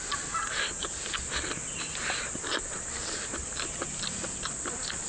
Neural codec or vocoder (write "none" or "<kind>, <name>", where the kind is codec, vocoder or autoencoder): none